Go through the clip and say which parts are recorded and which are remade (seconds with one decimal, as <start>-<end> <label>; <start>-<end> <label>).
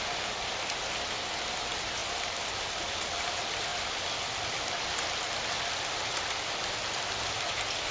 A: 0.0-7.9 recorded